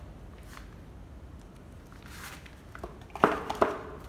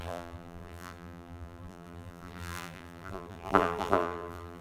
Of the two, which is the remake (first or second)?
second